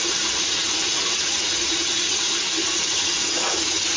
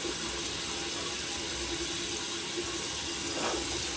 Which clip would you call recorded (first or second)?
second